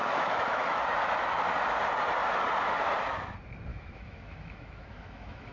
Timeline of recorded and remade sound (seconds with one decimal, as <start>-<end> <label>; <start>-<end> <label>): 0.0-0.8 remade; 0.8-3.7 recorded; 3.7-5.5 remade